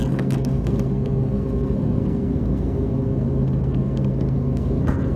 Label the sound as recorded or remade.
remade